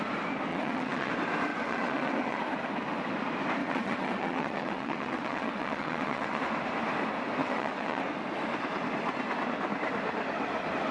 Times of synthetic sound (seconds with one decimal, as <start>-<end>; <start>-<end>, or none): 0.5-1.1; 1.5-2.4; 3.6-6.4; 7.4-8.0